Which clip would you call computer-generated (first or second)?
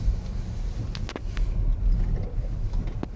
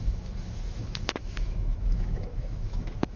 second